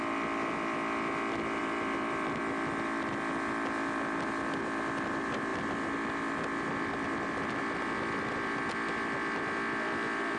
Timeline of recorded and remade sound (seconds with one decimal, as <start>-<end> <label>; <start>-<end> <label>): 0.0-1.6 recorded; 1.6-2.4 remade; 2.4-10.4 recorded